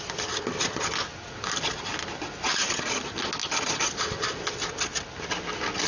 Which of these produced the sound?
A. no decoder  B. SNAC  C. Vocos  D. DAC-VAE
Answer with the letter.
A